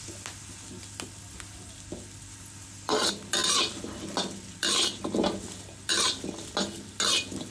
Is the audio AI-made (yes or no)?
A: no